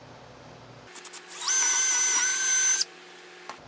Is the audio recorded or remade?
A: recorded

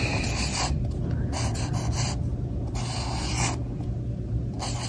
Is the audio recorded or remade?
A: recorded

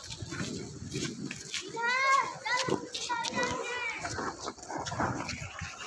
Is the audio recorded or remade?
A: recorded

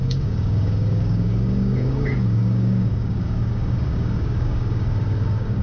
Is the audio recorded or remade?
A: remade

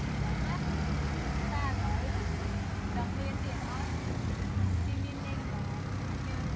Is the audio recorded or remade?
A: recorded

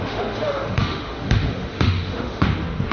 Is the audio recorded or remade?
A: remade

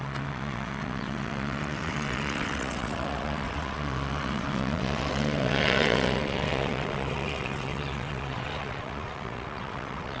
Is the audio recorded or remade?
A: remade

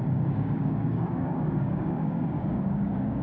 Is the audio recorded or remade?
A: remade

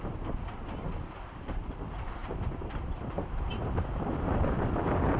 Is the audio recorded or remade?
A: remade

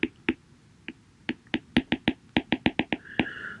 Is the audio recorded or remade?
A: recorded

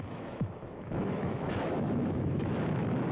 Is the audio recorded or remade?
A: remade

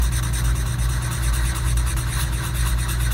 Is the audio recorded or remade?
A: recorded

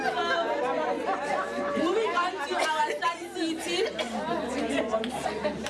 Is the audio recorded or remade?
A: recorded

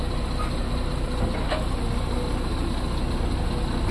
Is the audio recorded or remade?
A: recorded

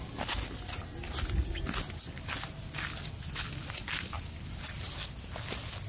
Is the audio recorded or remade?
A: recorded